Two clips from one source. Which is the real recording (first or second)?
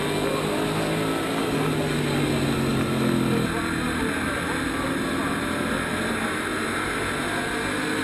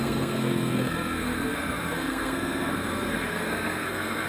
first